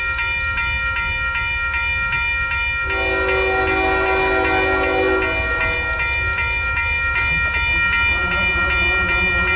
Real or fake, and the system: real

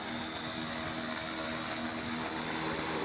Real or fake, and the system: real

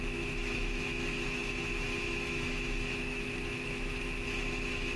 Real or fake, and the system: fake, autoencoder, DAC-VAE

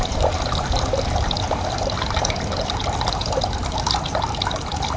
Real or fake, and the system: fake, vocoder, BigVGAN v2